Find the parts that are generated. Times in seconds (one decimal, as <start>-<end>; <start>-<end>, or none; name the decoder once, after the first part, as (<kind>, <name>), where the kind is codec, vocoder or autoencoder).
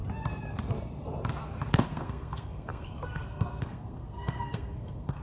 1.7-5.2 (codec, SNAC)